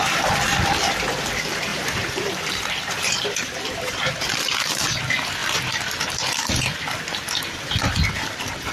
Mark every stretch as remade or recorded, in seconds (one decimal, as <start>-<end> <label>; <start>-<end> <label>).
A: 0.0-1.7 recorded; 1.7-4.9 remade; 4.9-8.7 recorded